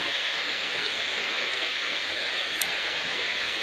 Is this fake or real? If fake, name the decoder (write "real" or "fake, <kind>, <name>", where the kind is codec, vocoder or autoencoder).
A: fake, codec, SNAC